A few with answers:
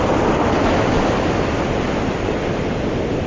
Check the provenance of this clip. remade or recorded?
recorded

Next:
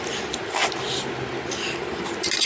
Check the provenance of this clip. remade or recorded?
recorded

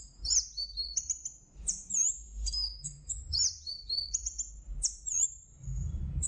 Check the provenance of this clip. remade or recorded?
remade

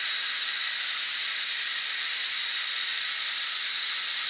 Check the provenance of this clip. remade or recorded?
recorded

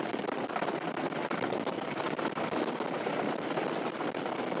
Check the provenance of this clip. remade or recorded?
recorded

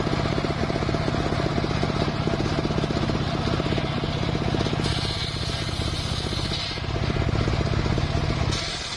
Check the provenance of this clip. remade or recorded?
recorded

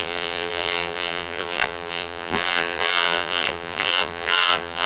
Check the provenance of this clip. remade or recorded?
remade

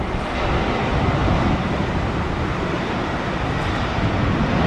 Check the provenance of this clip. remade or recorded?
recorded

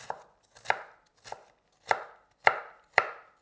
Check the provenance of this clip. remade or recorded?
recorded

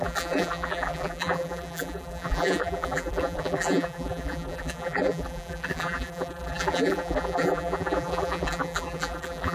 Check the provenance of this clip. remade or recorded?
remade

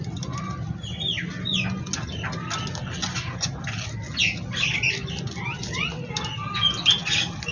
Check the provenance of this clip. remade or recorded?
recorded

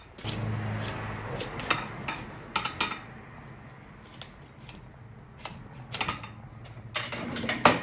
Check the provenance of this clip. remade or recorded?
recorded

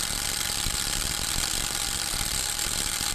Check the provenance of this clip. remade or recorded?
remade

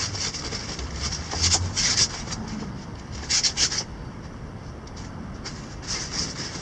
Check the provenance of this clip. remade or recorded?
recorded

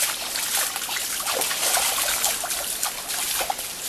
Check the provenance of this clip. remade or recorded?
recorded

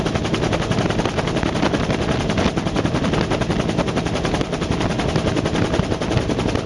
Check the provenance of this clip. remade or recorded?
recorded